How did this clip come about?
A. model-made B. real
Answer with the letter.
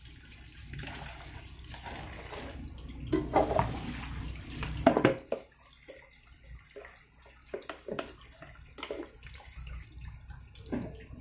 B